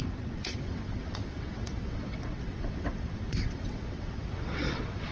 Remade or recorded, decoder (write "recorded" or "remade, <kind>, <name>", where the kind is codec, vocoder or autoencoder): remade, vocoder, WaveNeXt